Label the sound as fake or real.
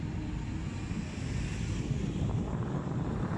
real